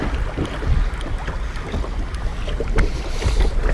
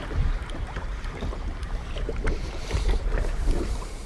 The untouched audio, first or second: first